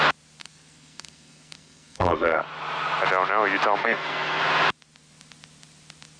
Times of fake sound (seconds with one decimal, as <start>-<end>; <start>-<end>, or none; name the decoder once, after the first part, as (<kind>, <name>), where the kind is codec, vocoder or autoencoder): 0.4-2.4 (codec, SNAC); 3.8-4.4